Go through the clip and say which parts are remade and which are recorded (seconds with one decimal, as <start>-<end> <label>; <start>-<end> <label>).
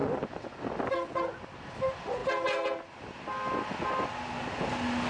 0.0-5.1 recorded